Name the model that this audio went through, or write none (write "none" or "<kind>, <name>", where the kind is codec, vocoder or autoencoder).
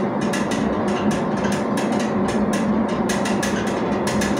none